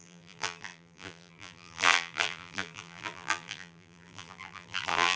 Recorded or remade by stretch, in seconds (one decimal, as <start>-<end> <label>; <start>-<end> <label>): 0.0-5.2 remade